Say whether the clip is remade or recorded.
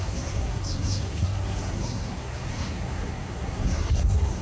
remade